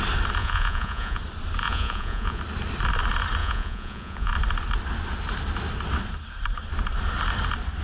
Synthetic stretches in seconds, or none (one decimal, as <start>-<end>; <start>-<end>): 0.4-1.2; 1.6-2.4; 3.4-4.3